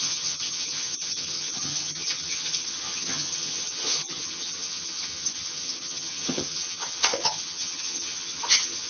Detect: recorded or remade remade